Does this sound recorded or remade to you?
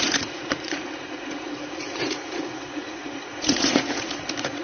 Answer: remade